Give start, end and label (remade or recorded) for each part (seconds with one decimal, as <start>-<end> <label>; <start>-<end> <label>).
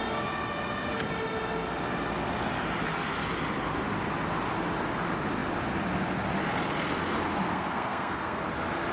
0.0-7.5 recorded; 7.5-8.4 remade; 8.4-8.9 recorded